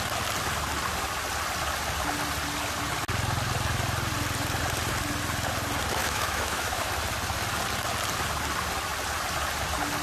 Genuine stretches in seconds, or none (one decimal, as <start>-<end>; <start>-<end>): 0.0-6.0; 6.9-10.0